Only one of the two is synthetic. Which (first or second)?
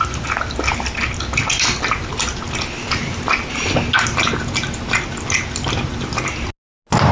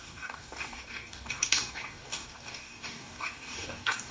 second